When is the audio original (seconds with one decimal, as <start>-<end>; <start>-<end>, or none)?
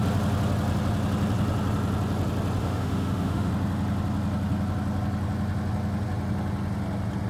0.0-2.6; 3.5-7.3